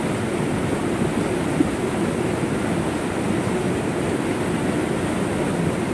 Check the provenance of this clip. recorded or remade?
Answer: recorded